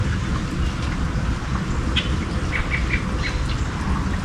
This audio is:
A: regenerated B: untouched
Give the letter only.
B